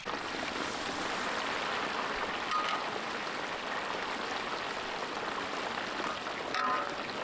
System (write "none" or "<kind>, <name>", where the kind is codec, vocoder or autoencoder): none